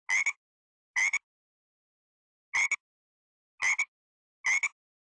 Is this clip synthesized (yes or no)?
no